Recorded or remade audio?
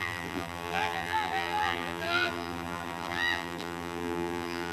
remade